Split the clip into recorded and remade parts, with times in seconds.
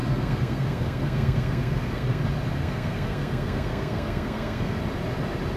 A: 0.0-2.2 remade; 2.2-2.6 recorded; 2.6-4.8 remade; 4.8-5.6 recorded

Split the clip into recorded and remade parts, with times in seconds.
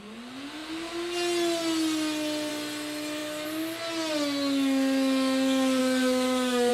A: 0.0-5.8 recorded; 5.8-6.7 remade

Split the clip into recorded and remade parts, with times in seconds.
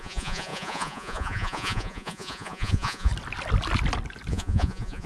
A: 0.0-3.1 remade; 3.1-4.3 recorded; 4.3-5.1 remade